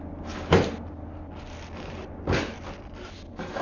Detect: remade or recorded recorded